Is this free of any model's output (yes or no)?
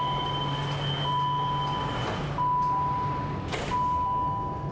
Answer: yes